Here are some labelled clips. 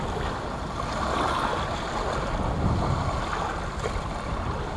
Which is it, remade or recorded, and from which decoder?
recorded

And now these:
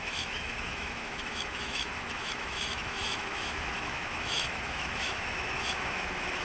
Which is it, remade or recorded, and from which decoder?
remade, autoencoder, DAC-VAE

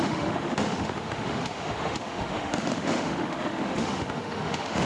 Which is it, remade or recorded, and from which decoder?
remade, autoencoder, DAC-VAE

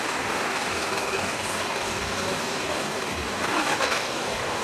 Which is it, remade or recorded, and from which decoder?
remade, codec, DAC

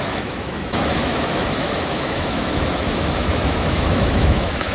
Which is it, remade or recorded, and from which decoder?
remade, autoencoder, DAC-VAE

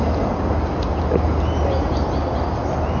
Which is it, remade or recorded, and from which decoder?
recorded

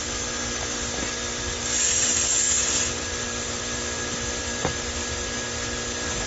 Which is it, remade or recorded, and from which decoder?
recorded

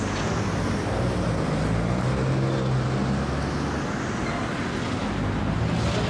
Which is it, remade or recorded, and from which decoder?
recorded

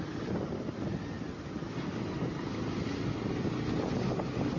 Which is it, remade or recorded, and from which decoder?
recorded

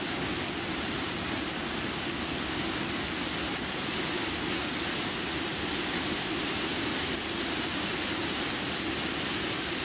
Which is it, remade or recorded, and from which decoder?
recorded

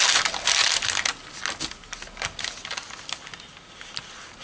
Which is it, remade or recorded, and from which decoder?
recorded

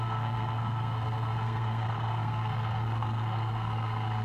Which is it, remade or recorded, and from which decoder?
remade, codec, SNAC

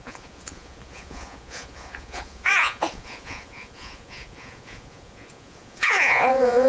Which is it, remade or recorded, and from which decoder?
remade, vocoder, Vocos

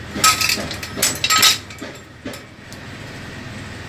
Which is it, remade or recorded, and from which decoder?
recorded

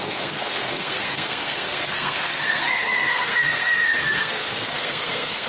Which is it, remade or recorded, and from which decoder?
remade, codec, SNAC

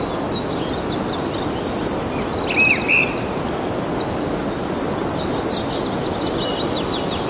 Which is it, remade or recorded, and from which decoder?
recorded